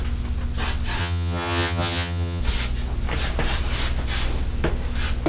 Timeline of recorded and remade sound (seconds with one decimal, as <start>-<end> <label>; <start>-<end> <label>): 0.0-1.0 recorded; 1.0-2.4 remade; 2.4-5.3 recorded